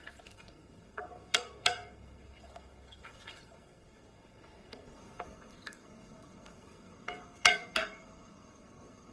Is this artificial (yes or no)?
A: yes